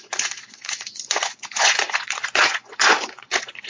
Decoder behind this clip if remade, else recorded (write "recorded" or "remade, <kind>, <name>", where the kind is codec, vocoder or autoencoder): remade, vocoder, Vocos